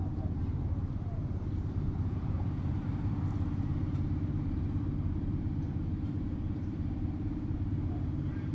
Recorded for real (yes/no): no